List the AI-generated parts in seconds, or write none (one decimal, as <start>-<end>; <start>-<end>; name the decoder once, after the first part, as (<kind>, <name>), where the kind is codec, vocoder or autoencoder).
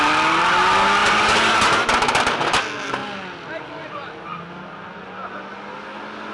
none